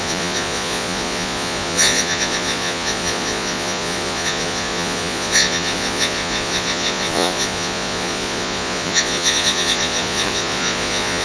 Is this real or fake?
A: fake